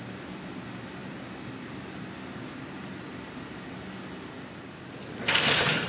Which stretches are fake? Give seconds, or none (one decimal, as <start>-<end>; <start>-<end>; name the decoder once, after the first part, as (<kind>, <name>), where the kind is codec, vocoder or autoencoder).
none